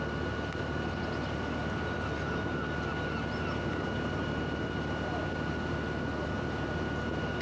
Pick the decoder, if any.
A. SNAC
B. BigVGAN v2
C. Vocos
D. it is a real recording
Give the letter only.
D